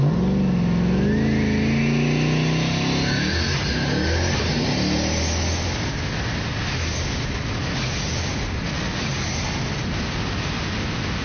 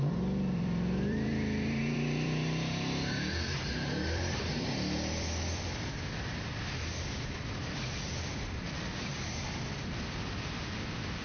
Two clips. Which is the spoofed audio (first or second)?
second